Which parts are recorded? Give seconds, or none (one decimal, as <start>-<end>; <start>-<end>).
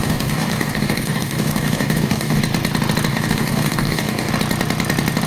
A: 2.4-3.1; 4.3-5.3